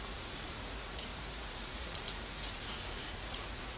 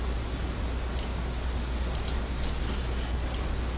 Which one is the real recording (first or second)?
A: second